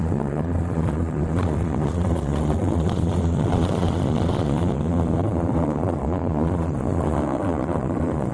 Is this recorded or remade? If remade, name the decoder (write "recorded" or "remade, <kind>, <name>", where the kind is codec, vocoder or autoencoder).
remade, vocoder, Vocos